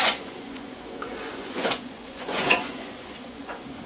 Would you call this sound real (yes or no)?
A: no